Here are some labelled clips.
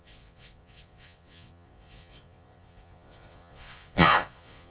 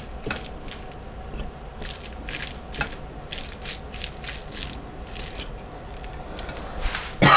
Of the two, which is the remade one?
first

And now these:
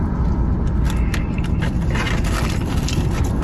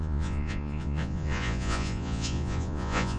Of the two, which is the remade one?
second